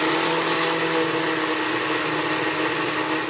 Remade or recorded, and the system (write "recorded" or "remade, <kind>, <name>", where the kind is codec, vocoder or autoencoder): recorded